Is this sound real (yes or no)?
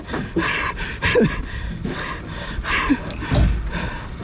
yes